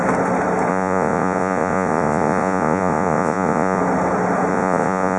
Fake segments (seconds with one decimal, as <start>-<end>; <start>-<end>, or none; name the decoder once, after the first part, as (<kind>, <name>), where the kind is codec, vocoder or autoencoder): 0.7-3.8 (vocoder, Vocos); 4.5-5.2